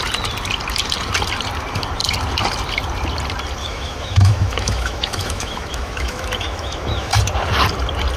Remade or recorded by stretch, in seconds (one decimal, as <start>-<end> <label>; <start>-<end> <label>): 0.0-3.6 recorded; 3.6-7.1 remade; 7.1-8.2 recorded